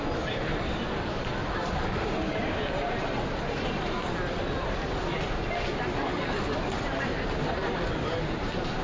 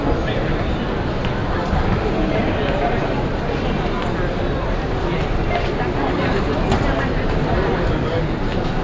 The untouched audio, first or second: second